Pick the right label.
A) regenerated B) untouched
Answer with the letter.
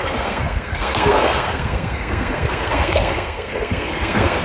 A